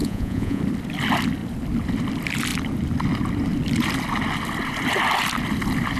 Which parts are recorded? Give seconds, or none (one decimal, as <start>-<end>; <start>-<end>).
0.6-6.0